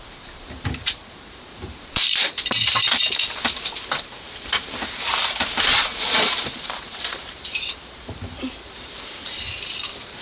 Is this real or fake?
fake